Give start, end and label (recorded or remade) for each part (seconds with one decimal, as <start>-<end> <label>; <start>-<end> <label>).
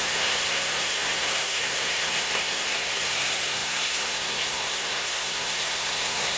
0.0-6.4 remade